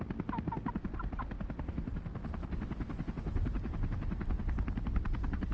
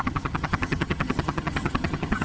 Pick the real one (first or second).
first